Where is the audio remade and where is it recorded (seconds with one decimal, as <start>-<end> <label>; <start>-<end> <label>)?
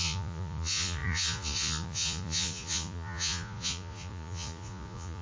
0.0-5.2 remade